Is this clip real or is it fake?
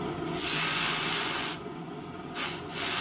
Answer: fake